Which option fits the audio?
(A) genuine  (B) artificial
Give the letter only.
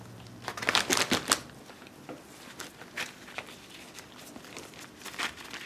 A